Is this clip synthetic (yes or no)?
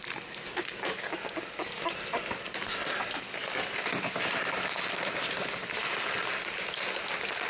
no